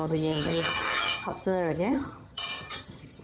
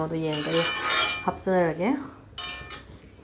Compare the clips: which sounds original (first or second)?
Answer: second